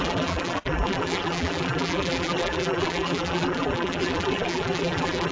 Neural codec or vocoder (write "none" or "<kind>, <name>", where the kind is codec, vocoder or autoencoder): vocoder, BigVGAN v2